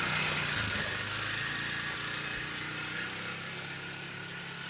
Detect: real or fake real